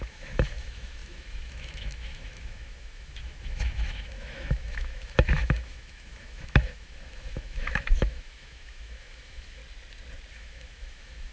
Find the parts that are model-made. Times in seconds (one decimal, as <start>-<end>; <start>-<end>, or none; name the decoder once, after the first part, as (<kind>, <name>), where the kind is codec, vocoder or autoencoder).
0.0-9.6 (autoencoder, DAC-VAE); 10.3-11.3